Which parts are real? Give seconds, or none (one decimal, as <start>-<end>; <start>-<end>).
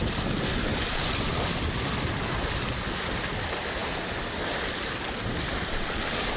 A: 0.0-6.4